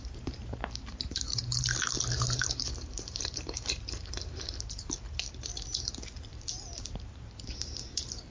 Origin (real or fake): fake